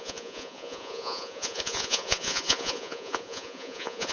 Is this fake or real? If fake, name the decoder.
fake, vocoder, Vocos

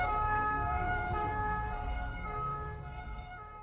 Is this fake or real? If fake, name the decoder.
fake, codec, SNAC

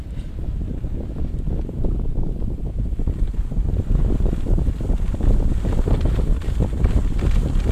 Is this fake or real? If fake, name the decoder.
real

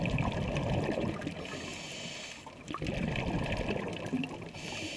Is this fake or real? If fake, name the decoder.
real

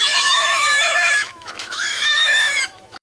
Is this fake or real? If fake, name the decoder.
fake, autoencoder, DAC-VAE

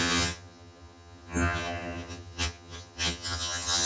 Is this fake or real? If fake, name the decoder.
fake, vocoder, HiFi-GAN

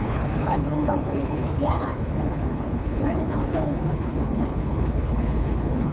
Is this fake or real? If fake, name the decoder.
fake, codec, HILCodec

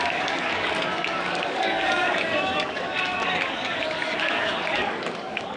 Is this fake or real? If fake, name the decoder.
fake, codec, DAC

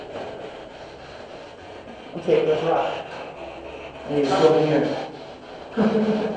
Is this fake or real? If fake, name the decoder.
real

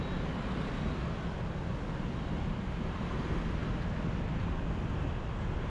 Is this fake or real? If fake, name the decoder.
real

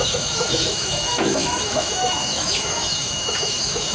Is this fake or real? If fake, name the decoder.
fake, autoencoder, DAC-VAE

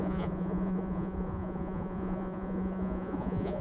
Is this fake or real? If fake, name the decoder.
fake, vocoder, Vocos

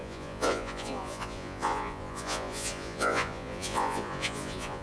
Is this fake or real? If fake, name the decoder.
fake, vocoder, Vocos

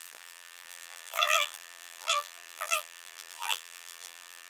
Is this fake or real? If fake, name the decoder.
fake, vocoder, BigVGAN v2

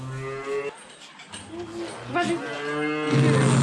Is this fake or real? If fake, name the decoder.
real